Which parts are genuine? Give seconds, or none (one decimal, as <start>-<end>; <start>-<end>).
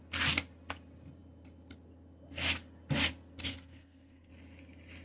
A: 0.0-3.5; 4.3-5.0